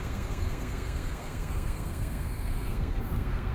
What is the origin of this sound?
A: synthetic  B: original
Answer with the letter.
A